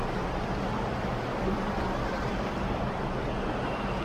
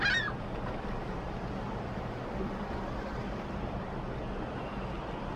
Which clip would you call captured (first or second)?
first